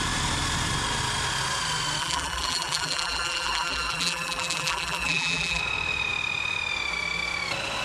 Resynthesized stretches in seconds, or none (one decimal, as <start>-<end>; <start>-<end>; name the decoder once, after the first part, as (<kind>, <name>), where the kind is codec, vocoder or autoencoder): 2.0-5.6 (vocoder, BigVGAN v2)

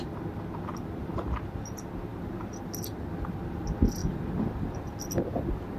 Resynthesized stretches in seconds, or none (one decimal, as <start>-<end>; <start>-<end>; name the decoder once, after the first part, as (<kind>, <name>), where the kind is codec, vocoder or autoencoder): none

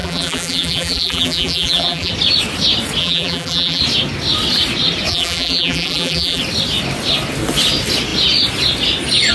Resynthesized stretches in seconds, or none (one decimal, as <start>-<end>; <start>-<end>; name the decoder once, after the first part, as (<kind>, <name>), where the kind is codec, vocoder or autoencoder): 0.0-2.1 (vocoder, BigVGAN v2); 3.0-3.8; 5.1-6.4

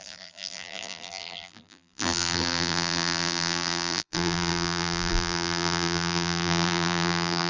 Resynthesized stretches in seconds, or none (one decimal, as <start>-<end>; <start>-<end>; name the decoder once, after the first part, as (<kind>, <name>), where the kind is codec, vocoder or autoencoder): 0.0-7.5 (vocoder, BigVGAN v2)

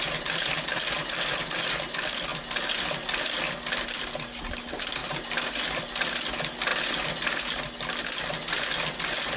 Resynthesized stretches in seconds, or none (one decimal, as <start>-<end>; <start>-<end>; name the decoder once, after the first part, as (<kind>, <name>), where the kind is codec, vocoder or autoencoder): 5.0-5.8 (vocoder, BigVGAN v2)